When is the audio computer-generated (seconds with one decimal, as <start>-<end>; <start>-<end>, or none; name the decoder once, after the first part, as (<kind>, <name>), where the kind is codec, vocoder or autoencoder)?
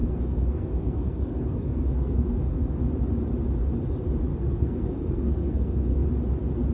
0.0-2.8 (codec, SNAC); 4.3-6.1